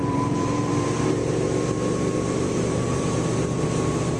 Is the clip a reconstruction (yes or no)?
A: yes